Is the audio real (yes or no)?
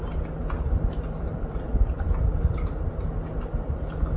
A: yes